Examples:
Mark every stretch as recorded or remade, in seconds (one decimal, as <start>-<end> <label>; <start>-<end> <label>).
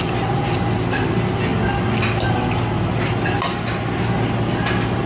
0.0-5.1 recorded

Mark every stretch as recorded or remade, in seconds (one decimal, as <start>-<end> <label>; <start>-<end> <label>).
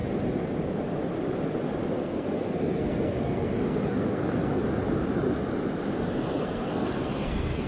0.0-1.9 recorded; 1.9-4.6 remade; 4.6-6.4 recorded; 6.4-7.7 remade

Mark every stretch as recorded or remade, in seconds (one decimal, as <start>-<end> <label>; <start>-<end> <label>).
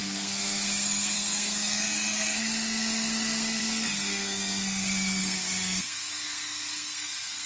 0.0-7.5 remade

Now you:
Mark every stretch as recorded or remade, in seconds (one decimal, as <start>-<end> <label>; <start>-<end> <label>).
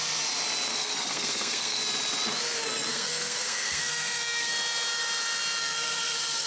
0.0-0.7 recorded; 0.7-1.8 remade; 1.8-2.9 recorded; 2.9-4.5 remade; 4.5-5.6 recorded; 5.6-6.5 remade